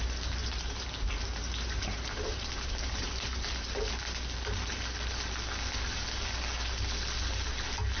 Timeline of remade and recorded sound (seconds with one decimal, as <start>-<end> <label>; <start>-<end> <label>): 0.0-0.4 recorded; 0.4-3.9 remade; 3.9-8.0 recorded